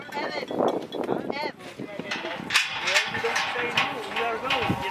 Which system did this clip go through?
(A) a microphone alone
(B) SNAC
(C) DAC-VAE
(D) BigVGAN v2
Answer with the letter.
A